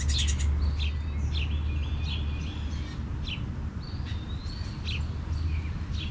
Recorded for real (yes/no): yes